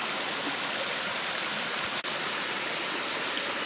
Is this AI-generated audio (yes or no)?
no